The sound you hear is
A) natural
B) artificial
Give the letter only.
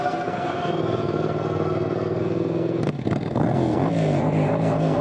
B